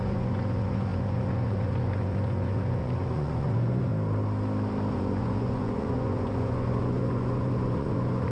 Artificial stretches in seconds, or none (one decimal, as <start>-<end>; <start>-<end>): 0.0-3.9; 4.9-8.3